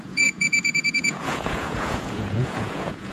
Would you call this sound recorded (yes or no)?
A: no